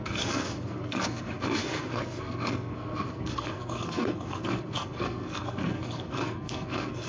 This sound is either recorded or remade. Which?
remade